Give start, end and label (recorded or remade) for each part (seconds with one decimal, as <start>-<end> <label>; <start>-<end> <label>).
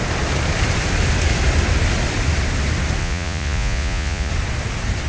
0.0-3.0 recorded; 3.0-4.3 remade; 4.3-5.1 recorded